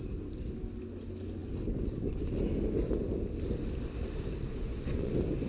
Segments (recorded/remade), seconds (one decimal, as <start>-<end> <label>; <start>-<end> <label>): 0.0-4.5 recorded; 4.5-5.1 remade; 5.1-5.5 recorded